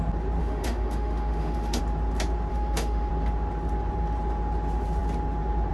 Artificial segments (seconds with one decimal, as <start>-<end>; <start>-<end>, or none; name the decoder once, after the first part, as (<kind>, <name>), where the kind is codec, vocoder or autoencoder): 0.4-1.8 (autoencoder, DAC-VAE); 2.5-3.1